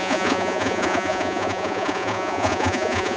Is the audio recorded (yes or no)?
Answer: no